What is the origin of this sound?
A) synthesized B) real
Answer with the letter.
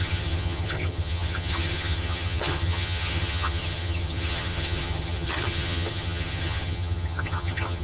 A